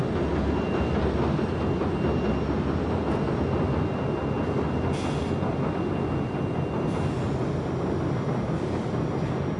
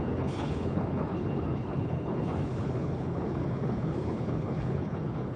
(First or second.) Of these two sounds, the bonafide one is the first